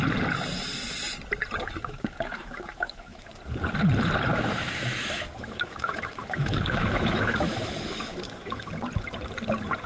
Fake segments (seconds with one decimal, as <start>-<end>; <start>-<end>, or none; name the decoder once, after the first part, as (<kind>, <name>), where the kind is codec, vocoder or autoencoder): 1.6-3.3 (autoencoder, DAC-VAE); 4.3-8.7